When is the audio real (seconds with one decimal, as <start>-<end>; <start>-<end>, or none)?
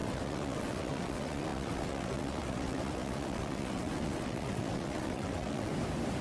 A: 5.7-6.2